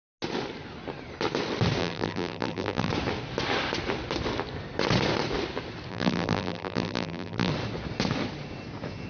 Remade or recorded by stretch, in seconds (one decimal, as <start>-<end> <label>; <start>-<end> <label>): 0.0-1.8 recorded; 1.8-2.9 remade; 2.9-5.9 recorded; 5.9-7.5 remade; 7.5-9.1 recorded